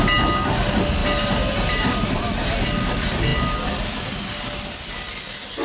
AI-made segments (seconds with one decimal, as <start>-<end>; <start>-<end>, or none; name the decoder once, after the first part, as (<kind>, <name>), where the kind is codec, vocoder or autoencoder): 1.0-2.6 (vocoder, BigVGAN v2)